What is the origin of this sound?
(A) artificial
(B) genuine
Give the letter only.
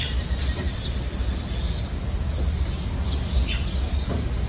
A